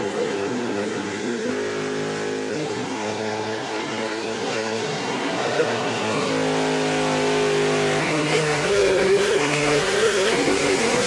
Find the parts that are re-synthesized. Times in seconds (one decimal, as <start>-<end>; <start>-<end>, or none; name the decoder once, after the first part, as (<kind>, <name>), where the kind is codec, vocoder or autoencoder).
0.0-1.5 (codec, SNAC); 2.5-6.3; 8.0-11.1